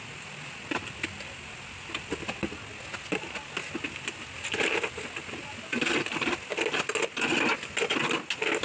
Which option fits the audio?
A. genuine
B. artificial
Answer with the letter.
A